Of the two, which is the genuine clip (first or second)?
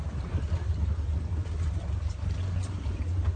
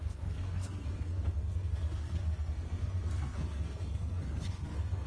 first